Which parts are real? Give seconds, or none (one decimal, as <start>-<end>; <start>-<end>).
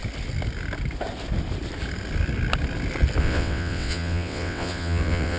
0.0-3.2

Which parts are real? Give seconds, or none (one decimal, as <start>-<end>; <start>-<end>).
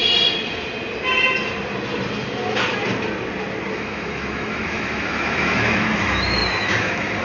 0.0-3.7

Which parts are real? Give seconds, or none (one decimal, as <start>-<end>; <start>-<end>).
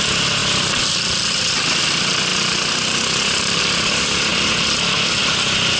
0.0-5.8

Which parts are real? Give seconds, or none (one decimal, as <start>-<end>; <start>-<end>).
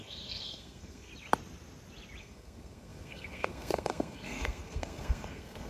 1.1-2.2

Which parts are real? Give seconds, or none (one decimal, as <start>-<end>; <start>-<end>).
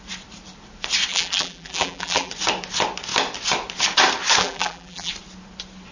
0.0-1.1; 2.3-4.4; 5.1-5.9